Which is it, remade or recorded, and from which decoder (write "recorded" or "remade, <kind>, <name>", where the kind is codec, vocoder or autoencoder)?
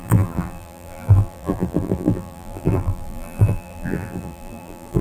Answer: remade, vocoder, BigVGAN v2